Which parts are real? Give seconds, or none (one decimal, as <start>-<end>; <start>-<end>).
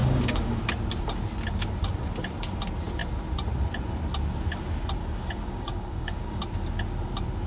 0.6-5.0; 6.4-7.5